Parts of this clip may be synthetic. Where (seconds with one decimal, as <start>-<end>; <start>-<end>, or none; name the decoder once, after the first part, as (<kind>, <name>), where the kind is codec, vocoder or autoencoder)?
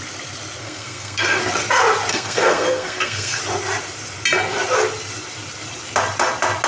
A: 0.6-1.4 (codec, SNAC); 2.1-3.4